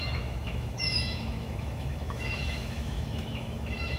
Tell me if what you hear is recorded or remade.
remade